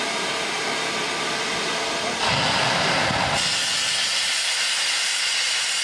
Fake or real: real